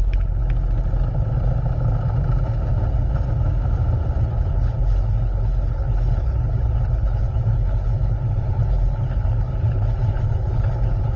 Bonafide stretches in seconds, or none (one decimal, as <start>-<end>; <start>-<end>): 0.4-4.2